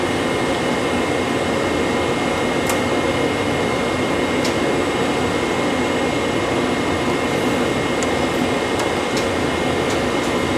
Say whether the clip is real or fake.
real